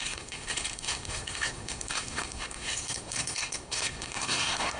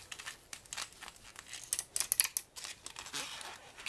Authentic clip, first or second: second